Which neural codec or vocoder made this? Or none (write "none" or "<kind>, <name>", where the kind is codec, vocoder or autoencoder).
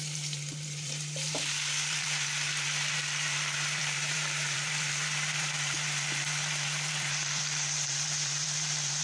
vocoder, BigVGAN v2